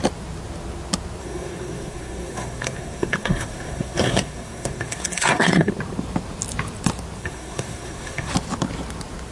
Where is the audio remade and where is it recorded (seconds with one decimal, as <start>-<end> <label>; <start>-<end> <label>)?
0.0-1.2 recorded; 1.2-5.7 remade; 5.7-7.2 recorded; 7.2-8.3 remade; 8.3-9.3 recorded